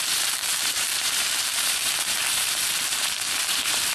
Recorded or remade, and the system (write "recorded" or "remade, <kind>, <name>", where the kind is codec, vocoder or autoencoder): remade, vocoder, BigVGAN v2